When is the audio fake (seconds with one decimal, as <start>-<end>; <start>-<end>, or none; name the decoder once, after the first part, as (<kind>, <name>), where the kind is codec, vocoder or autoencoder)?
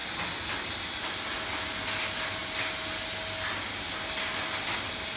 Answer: none